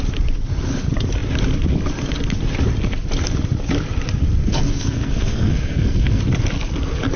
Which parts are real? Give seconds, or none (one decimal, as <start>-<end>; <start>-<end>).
0.0-4.4; 6.2-7.2